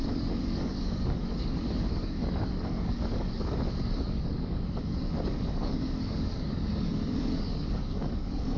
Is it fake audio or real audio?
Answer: fake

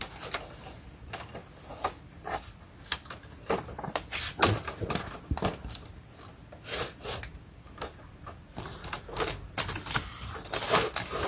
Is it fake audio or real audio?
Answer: real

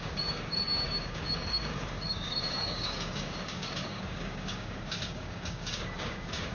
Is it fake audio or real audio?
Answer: fake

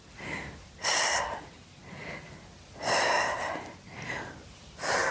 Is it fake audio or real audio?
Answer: real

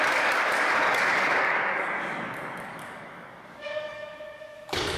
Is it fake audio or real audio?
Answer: fake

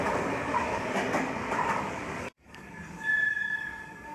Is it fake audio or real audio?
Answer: fake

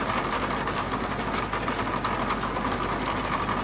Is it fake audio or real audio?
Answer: real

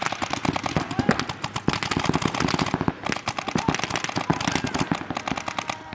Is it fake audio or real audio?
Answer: real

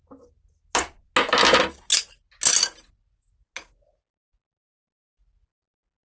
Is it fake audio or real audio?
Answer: real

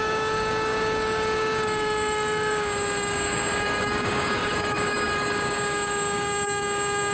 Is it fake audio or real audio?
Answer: fake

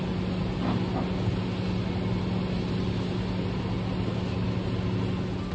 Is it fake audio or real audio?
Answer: real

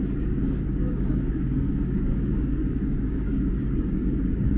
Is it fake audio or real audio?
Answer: fake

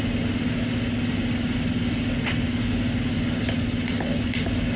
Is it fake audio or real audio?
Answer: real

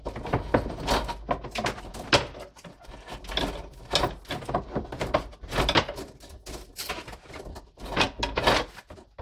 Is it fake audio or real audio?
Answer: real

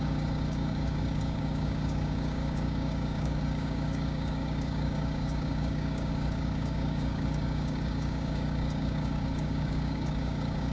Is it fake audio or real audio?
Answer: fake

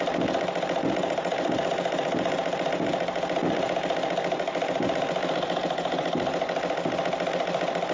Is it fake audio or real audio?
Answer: real